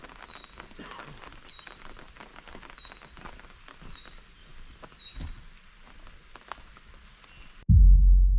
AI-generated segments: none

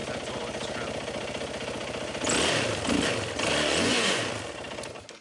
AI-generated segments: 3.5-4.2 (vocoder, Vocos)

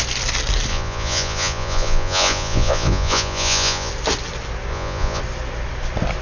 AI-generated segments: 0.7-3.9 (vocoder, Vocos); 4.7-5.2

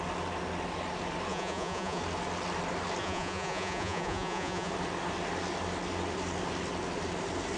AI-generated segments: 1.3-2.0 (vocoder, Vocos); 3.0-4.7